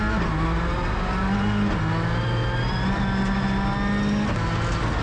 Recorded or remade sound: recorded